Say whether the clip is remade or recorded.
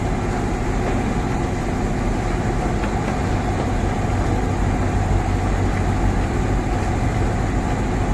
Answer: recorded